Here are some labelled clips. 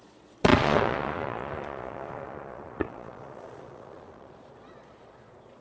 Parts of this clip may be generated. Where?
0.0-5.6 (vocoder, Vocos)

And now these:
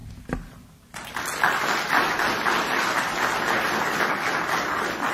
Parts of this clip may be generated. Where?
none

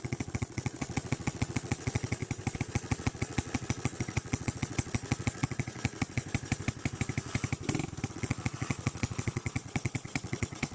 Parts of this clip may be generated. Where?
0.0-2.2 (vocoder, Vocos); 2.7-6.2; 8.1-10.7

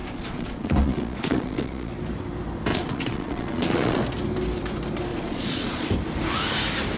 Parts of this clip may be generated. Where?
0.0-1.9 (vocoder, Vocos); 2.7-4.0; 5.1-5.9

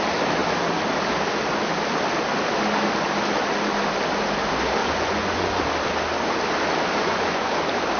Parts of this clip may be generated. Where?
4.8-5.6 (vocoder, Vocos); 7.0-7.5

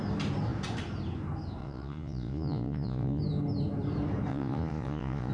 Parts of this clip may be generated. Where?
1.6-3.2 (vocoder, Vocos); 4.3-5.3